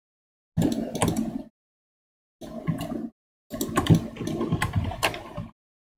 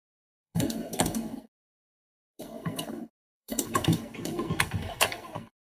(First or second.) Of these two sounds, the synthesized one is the second